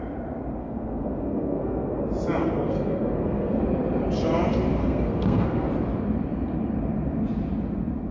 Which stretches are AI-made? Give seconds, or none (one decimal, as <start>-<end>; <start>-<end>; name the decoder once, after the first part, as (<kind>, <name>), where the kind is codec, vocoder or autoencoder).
0.6-2.0 (codec, SNAC); 2.4-3.6; 4.8-5.7